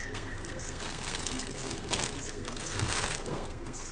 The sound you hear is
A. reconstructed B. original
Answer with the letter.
A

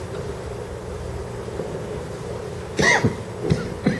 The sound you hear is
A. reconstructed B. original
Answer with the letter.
B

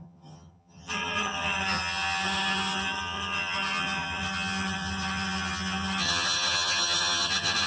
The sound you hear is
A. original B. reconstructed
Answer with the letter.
B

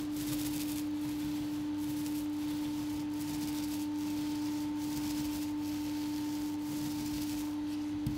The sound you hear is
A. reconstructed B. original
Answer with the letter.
B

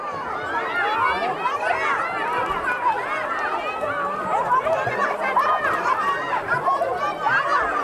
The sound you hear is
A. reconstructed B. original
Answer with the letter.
B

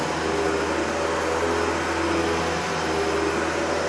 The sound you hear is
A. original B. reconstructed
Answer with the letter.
A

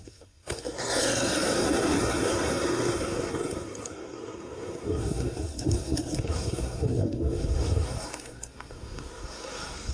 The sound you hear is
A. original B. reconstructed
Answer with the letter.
B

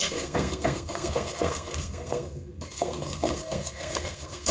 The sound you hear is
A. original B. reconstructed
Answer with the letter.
B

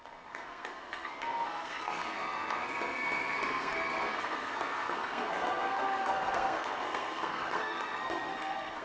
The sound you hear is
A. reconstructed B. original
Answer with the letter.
A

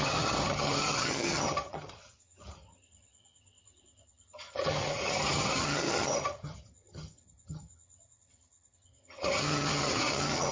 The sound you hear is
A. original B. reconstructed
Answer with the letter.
B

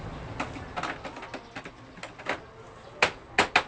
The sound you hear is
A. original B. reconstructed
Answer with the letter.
A